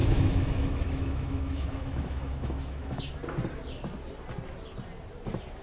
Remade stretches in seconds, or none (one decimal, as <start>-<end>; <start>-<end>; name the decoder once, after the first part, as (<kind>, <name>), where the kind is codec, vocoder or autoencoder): 0.0-3.0 (autoencoder, DAC-VAE)